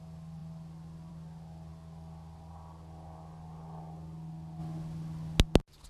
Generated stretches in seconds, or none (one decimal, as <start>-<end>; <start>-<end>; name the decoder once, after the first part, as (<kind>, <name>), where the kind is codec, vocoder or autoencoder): none